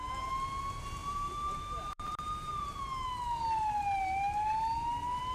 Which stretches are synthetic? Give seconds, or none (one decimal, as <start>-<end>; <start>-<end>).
1.0-2.8